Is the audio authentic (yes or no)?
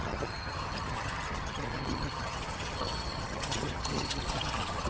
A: no